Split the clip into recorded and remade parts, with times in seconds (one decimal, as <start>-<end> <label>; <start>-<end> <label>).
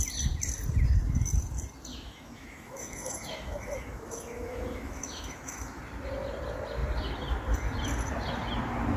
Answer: 0.0-1.9 recorded; 1.9-5.8 remade; 5.8-9.0 recorded